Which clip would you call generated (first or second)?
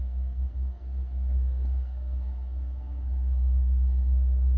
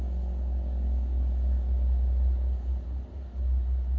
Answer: first